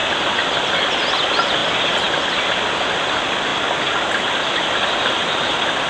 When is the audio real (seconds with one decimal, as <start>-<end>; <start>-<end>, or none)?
0.0-5.9